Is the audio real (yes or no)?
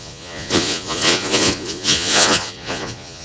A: no